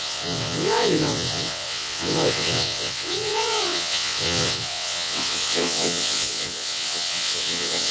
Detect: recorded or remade remade